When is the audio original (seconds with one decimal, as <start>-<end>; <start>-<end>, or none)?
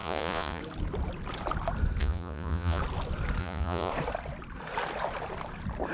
0.6-2.0; 2.8-3.4; 3.9-5.9